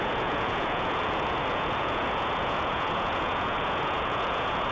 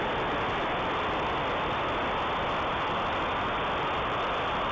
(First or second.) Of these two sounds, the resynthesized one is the first